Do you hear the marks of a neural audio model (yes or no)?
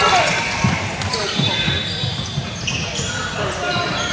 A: no